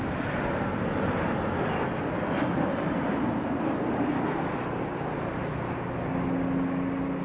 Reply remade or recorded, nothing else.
recorded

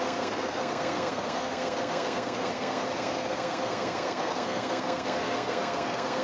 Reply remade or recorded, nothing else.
remade